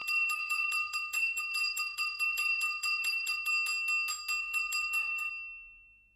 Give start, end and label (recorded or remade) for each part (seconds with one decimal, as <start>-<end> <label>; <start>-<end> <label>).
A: 0.0-3.5 remade; 3.5-4.4 recorded; 4.4-5.3 remade; 5.3-6.2 recorded